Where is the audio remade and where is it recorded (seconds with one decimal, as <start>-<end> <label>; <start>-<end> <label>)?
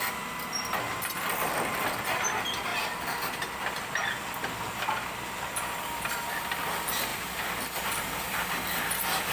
0.0-9.3 remade